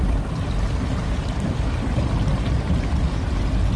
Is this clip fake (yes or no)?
yes